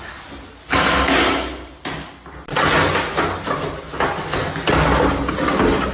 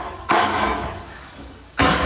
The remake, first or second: second